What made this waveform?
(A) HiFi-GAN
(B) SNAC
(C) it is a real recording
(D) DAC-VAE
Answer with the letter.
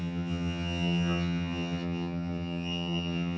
A